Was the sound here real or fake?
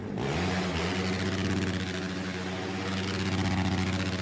real